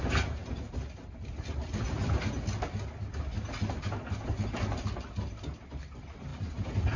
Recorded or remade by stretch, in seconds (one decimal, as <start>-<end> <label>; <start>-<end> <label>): 0.0-7.0 recorded